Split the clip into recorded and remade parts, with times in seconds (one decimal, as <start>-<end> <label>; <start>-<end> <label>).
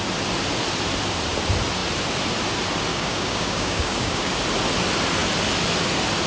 0.0-2.9 recorded; 2.9-4.3 remade; 4.3-6.3 recorded